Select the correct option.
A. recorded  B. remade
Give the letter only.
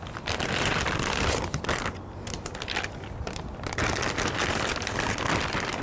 A